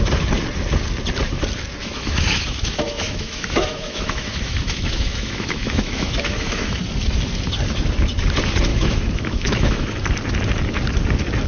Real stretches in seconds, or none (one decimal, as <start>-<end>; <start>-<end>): 0.0-1.8; 6.8-8.7; 9.9-11.5